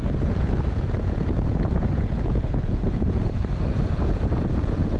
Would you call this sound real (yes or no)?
no